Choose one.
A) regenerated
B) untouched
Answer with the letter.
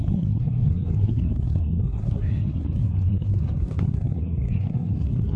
A